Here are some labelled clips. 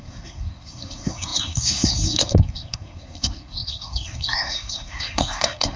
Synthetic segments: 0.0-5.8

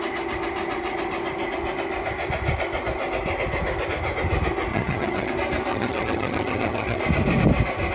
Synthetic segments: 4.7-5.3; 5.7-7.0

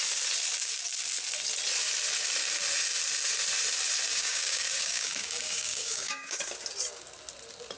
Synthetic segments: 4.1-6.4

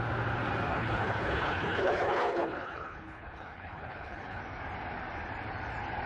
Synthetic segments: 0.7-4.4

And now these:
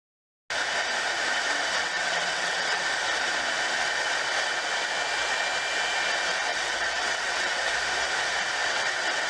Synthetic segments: 1.8-2.8; 6.5-7.7; 8.6-9.3

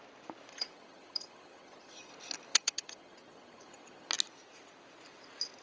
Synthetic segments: 0.5-2.1; 2.5-4.1

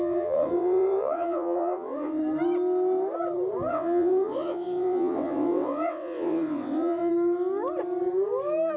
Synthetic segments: 0.0-2.2; 3.7-7.1

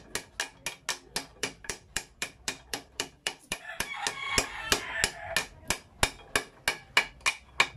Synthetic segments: 1.3-3.9